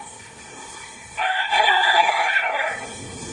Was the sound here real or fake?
fake